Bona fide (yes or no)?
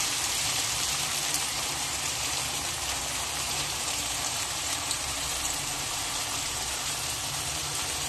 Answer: no